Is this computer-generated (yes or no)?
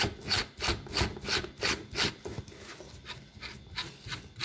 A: no